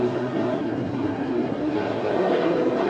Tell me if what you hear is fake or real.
fake